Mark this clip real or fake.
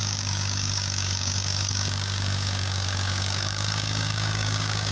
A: fake